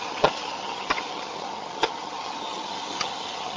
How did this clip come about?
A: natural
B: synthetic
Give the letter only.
B